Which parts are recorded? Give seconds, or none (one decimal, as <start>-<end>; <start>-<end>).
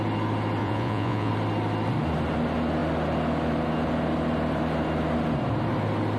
0.0-0.6; 1.3-6.2